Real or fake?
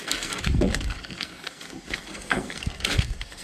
fake